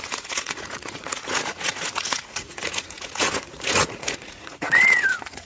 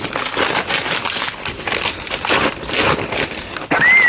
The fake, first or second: first